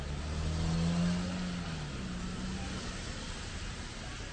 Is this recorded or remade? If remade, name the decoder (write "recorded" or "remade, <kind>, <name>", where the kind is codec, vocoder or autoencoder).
recorded